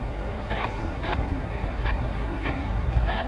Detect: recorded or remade remade